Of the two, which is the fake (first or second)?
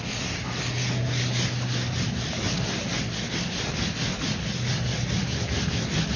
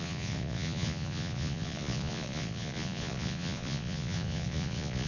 second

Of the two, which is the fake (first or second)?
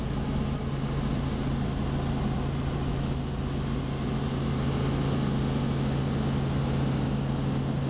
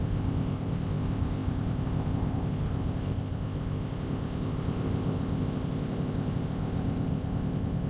second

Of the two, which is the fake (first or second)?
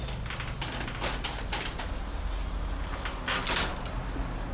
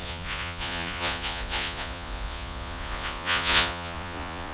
second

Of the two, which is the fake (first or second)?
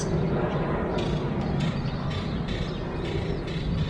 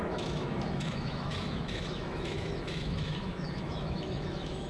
second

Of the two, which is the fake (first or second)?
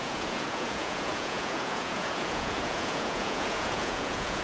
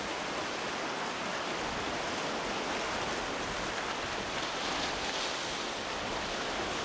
first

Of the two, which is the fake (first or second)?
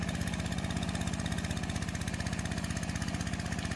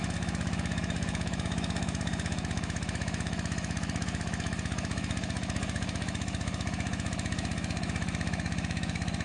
second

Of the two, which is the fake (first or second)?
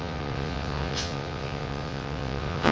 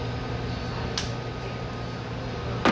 first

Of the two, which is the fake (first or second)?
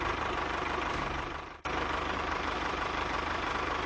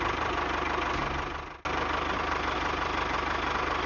first